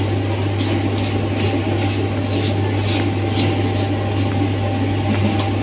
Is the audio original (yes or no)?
yes